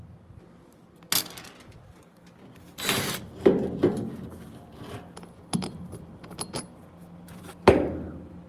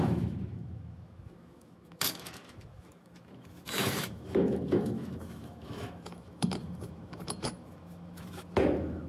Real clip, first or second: first